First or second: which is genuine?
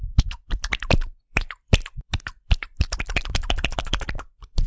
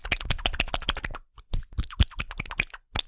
second